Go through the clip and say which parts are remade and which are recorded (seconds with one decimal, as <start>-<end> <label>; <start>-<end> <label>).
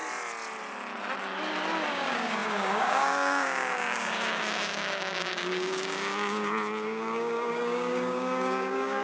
0.0-1.9 recorded; 1.9-9.0 remade